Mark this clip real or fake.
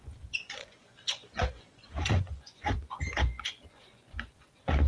fake